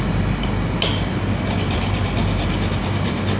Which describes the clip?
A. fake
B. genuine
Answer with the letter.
B